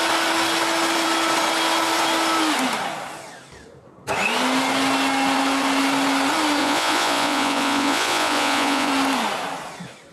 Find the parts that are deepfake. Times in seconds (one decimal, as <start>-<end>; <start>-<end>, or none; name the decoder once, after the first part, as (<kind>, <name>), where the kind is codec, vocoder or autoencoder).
6.6-8.9 (vocoder, Vocos)